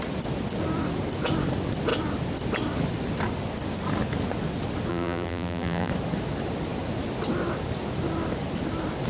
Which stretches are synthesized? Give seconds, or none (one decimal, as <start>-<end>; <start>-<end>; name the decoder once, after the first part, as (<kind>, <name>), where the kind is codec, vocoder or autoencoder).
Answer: 4.9-5.9 (vocoder, BigVGAN v2)